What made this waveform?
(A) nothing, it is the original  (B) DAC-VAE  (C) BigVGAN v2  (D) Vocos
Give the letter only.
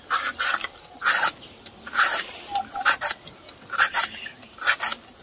A